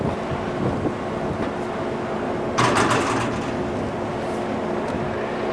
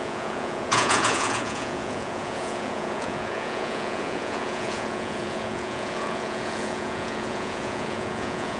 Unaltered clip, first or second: first